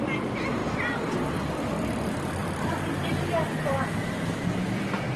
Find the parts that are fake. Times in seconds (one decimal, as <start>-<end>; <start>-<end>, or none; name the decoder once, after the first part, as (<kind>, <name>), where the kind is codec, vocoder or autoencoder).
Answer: 2.4-4.5 (vocoder, BigVGAN v2)